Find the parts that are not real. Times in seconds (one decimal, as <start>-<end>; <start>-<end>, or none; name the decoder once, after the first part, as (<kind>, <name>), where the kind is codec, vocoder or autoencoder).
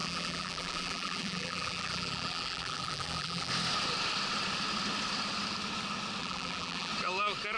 0.0-3.5 (vocoder, BigVGAN v2); 6.2-6.9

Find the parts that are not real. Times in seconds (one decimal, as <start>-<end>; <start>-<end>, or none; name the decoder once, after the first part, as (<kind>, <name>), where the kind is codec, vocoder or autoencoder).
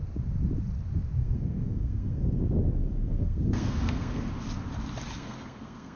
1.2-2.4 (codec, SNAC); 2.8-4.3; 5.2-6.0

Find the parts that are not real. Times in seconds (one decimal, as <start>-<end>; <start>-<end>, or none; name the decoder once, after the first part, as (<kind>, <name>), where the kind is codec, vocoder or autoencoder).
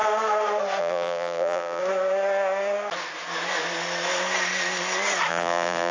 0.8-1.8 (vocoder, Vocos); 5.3-5.9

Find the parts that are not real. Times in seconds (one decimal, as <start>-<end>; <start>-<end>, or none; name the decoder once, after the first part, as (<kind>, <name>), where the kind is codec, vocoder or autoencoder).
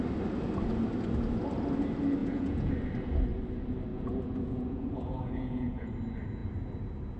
2.2-2.7 (vocoder, Vocos); 3.9-5.9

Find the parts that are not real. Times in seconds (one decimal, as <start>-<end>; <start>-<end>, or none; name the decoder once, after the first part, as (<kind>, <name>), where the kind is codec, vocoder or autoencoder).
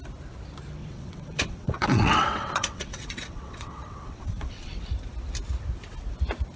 0.8-4.8 (vocoder, WaveNeXt)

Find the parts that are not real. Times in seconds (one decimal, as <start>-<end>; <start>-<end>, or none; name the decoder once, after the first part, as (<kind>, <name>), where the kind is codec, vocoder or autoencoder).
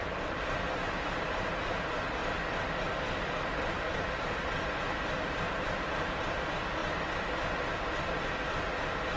0.8-1.7 (vocoder, BigVGAN v2)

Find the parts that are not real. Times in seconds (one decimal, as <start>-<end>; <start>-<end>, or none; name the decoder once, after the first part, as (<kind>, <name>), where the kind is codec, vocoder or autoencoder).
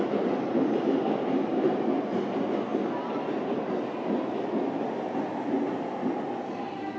none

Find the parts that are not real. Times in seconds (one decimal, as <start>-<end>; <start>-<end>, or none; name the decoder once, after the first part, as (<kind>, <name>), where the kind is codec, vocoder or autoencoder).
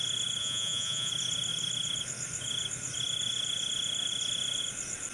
0.4-1.1 (vocoder, Vocos)